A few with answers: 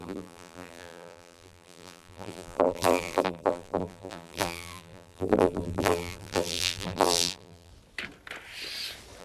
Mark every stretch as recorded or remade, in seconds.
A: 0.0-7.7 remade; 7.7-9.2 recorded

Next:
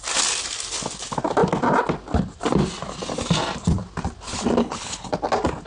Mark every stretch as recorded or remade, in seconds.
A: 0.0-4.6 recorded; 4.6-5.1 remade; 5.1-5.7 recorded

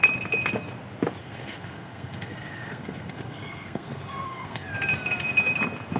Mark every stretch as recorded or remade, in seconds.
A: 0.0-1.2 recorded; 1.2-4.7 remade; 4.7-6.0 recorded